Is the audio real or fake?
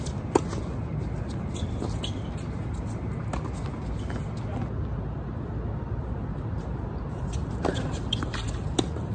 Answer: real